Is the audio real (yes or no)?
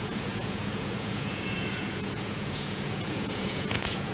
no